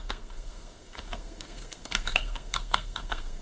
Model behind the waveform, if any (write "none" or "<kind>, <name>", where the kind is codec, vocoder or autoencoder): codec, SNAC